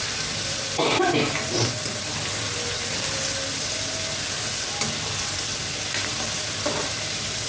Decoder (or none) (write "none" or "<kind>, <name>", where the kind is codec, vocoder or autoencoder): vocoder, BigVGAN v2